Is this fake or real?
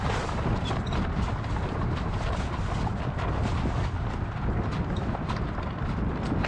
real